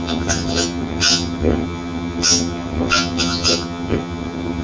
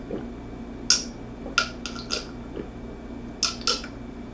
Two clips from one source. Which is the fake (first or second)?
first